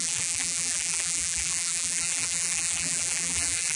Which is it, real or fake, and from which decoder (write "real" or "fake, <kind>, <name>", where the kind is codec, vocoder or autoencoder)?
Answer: fake, vocoder, BigVGAN v2